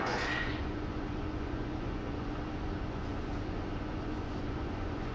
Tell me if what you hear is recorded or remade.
remade